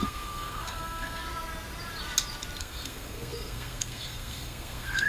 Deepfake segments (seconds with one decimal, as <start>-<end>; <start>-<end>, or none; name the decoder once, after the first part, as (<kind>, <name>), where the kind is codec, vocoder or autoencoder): 0.0-1.2 (codec, SNAC); 2.6-5.1